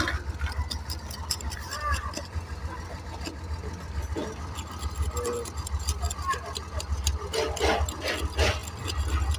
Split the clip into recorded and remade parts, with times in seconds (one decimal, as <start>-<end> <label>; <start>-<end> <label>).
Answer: 0.0-9.4 recorded

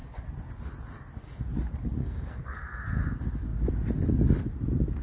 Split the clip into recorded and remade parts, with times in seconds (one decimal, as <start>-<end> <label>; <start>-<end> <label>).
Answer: 0.0-2.0 recorded; 2.0-2.8 remade; 2.8-5.0 recorded

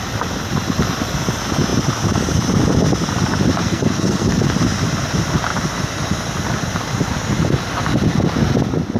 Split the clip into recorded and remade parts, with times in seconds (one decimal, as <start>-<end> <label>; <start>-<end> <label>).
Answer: 0.0-3.6 recorded; 3.6-4.4 remade; 4.4-9.0 recorded